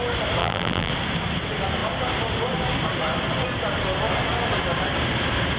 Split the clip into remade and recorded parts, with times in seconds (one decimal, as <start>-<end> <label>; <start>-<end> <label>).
0.0-0.4 recorded; 0.4-0.9 remade; 0.9-5.6 recorded